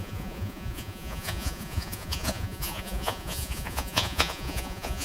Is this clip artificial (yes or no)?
yes